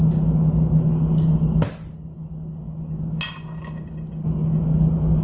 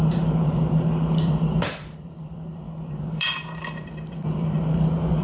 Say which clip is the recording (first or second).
first